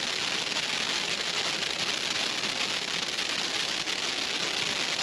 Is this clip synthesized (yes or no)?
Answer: no